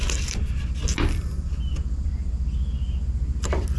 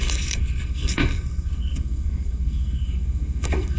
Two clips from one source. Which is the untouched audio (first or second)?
first